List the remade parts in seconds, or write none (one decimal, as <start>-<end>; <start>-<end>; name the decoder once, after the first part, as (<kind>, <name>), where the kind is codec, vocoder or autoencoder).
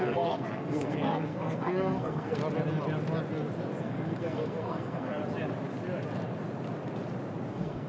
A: 0.0-2.4 (codec, SNAC); 3.8-5.2; 7.5-7.9